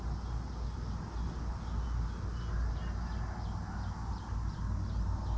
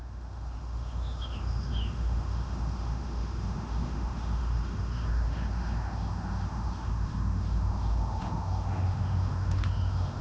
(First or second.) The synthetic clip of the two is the second